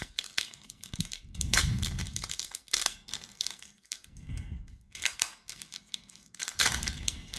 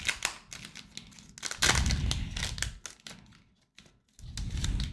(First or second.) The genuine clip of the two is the second